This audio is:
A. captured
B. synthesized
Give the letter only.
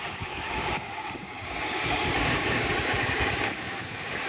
B